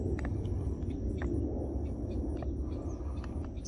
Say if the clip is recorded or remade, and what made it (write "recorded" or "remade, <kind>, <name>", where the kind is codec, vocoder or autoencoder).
recorded